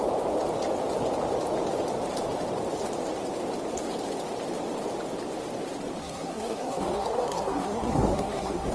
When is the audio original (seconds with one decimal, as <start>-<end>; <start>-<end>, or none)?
0.0-6.0